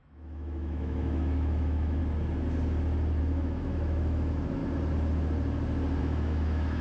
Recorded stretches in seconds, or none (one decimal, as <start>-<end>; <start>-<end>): 2.0-3.2; 4.6-6.0